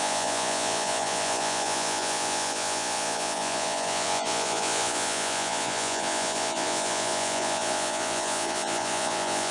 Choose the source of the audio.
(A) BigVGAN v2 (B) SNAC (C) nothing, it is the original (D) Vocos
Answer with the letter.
D